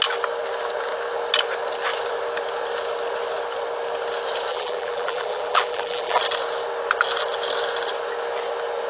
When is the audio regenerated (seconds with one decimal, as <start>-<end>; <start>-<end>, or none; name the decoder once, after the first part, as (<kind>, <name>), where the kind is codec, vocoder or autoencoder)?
4.5-6.2 (vocoder, BigVGAN v2)